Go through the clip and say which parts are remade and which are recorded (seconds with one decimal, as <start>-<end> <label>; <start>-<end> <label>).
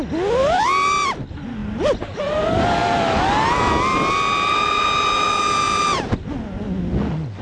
0.0-7.4 recorded